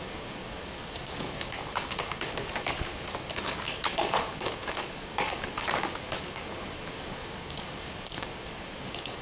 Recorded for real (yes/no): no